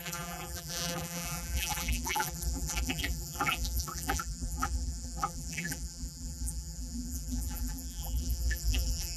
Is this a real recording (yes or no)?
no